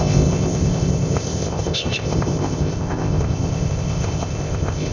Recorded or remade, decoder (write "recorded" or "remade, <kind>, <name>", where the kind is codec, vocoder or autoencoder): remade, codec, ZipCodec